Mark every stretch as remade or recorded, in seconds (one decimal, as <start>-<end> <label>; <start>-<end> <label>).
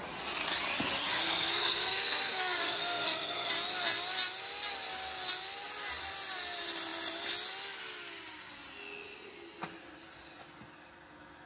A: 0.0-1.1 recorded; 1.1-3.5 remade; 3.5-11.5 recorded